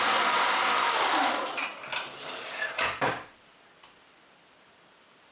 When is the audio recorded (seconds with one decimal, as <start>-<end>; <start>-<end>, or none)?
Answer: none